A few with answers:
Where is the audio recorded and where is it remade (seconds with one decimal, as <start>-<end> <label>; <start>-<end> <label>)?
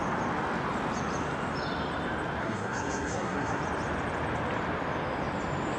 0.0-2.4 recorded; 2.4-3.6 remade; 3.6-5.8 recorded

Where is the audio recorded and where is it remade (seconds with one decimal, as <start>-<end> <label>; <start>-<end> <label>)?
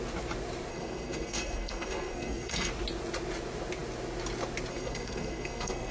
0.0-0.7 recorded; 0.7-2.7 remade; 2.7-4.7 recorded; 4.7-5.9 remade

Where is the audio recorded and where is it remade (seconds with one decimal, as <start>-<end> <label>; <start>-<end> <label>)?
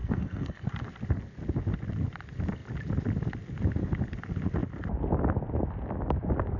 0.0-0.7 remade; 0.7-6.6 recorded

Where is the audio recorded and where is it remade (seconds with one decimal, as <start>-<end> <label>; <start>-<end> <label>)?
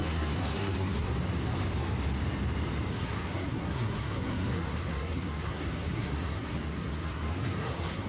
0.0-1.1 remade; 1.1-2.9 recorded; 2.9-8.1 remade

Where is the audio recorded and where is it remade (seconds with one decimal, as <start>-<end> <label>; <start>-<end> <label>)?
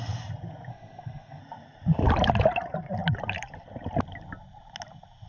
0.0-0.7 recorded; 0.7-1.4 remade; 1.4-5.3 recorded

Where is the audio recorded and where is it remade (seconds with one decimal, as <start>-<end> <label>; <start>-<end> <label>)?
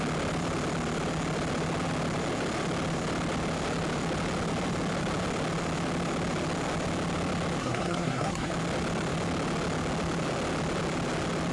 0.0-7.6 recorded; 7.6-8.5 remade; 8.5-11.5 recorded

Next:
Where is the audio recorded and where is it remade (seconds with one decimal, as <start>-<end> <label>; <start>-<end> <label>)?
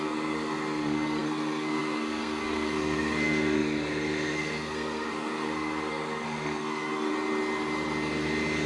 0.0-7.1 remade; 7.1-8.7 recorded